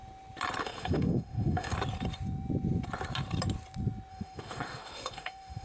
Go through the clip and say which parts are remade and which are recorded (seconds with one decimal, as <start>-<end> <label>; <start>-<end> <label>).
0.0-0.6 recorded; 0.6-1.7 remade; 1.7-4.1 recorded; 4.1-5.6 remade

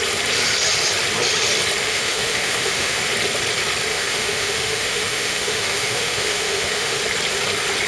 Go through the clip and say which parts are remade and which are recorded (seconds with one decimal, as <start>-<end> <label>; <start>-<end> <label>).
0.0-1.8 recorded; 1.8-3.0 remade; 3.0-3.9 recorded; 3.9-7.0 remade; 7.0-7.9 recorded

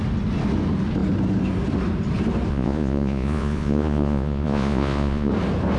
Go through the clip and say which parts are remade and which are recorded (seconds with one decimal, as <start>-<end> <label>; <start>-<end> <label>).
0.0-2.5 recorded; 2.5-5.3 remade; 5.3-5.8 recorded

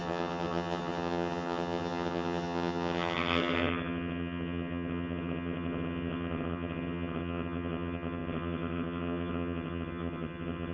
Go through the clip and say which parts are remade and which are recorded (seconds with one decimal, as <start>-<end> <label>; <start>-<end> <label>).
0.0-10.7 remade

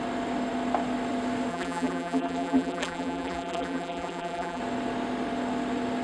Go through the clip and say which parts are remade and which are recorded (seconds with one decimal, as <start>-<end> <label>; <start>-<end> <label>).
0.0-1.5 recorded; 1.5-4.6 remade; 4.6-6.0 recorded

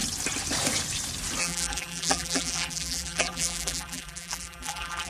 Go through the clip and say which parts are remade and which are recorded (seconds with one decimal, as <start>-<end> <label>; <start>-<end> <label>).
0.0-1.4 recorded; 1.4-5.1 remade

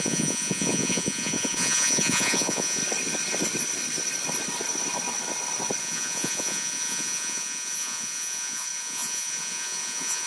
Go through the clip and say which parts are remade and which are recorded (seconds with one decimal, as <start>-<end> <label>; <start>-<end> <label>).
0.0-2.8 remade; 2.8-5.8 recorded; 5.8-10.3 remade

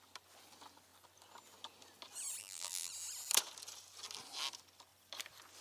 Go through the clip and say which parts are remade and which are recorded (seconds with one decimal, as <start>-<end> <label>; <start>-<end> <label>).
0.0-2.4 recorded; 2.4-2.9 remade; 2.9-5.6 recorded